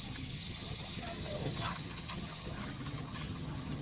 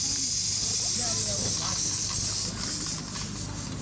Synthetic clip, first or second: first